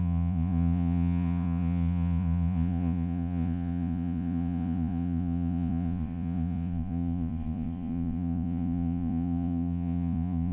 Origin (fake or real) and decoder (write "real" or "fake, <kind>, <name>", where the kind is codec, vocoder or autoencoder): fake, vocoder, Vocos